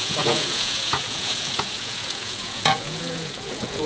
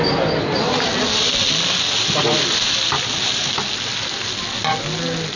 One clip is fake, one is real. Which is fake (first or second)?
first